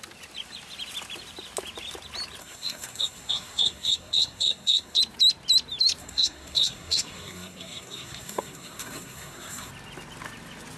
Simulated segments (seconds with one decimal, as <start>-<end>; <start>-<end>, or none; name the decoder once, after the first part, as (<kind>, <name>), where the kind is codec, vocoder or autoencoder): 2.4-5.0 (codec, SNAC); 6.0-9.7